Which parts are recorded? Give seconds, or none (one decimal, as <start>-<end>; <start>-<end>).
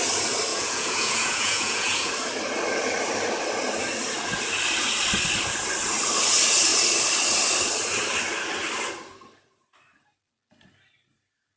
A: 0.0-0.5; 2.1-11.6